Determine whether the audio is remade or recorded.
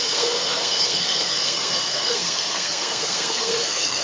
remade